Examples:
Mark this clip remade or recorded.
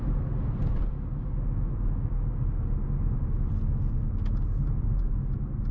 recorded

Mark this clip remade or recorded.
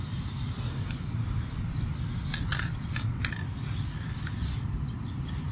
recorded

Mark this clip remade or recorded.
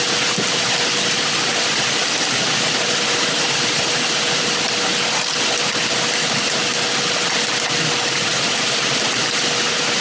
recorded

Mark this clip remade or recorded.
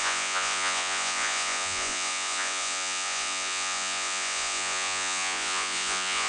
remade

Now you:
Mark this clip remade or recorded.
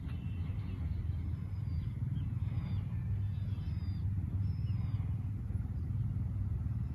recorded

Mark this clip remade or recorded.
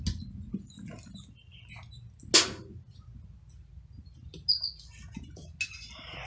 recorded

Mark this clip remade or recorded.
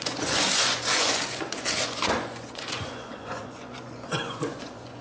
remade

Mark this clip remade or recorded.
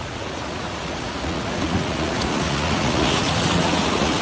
remade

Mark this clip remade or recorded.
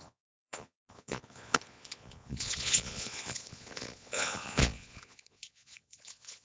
remade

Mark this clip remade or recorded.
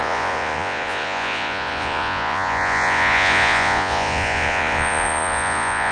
remade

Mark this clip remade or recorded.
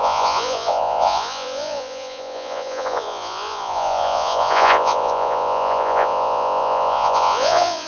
remade